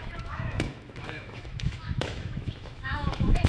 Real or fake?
fake